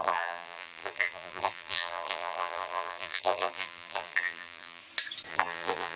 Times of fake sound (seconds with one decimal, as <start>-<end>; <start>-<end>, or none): 0.0-4.8; 5.3-6.0